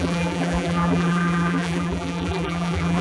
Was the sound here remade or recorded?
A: remade